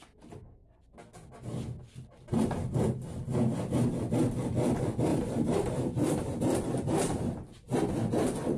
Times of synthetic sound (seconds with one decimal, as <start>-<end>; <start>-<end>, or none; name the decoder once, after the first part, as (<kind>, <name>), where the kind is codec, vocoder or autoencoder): 5.1-6.4 (vocoder, BigVGAN v2)